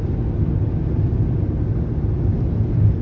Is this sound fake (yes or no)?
no